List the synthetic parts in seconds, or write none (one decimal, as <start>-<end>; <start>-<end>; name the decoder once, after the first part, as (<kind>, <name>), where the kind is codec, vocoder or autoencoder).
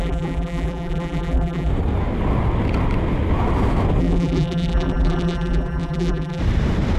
0.0-1.7 (vocoder, BigVGAN v2); 4.0-6.4